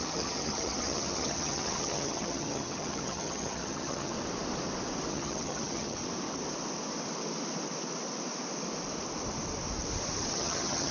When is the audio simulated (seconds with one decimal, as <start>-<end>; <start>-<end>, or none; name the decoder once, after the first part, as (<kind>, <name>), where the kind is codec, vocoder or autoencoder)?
0.0-4.1 (vocoder, HiFi-GAN); 5.1-6.0; 10.3-10.9